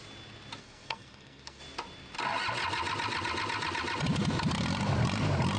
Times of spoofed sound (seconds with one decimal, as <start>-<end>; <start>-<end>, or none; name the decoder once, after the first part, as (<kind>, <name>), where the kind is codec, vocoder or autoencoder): 0.6-1.6 (codec, SNAC)